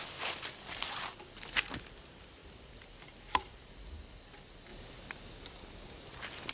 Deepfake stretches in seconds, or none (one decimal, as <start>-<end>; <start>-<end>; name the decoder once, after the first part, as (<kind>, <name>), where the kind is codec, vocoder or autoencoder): none